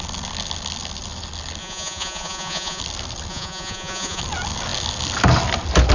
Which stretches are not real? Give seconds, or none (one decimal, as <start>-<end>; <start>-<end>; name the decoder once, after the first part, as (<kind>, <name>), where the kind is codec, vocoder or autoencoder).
1.6-2.8 (vocoder, Vocos); 3.3-4.2